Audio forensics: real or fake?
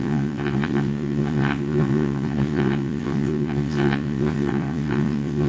fake